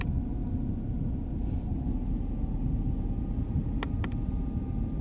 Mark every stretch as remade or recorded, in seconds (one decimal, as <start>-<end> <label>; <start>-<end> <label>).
0.0-5.0 recorded